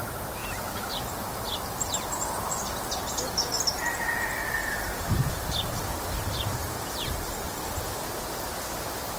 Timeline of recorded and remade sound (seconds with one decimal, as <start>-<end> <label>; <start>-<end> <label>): 0.0-1.5 recorded; 1.5-3.8 remade; 3.8-4.6 recorded; 4.6-7.8 remade; 7.8-9.2 recorded